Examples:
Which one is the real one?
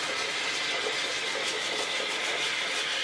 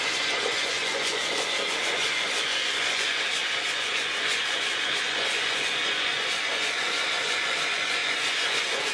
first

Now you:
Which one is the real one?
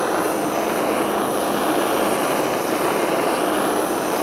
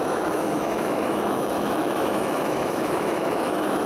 first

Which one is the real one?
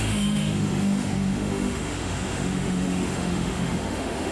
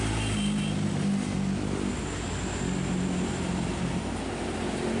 second